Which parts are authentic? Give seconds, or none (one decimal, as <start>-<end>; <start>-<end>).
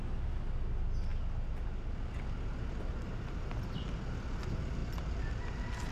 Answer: 0.0-5.9